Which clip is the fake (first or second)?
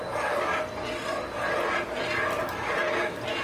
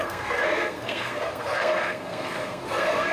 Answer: second